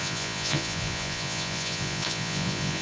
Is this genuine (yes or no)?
no